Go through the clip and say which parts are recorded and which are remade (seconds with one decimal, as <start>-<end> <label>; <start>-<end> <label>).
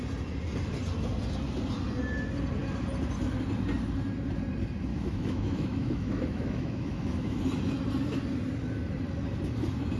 0.0-4.9 recorded; 4.9-7.4 remade; 7.4-10.0 recorded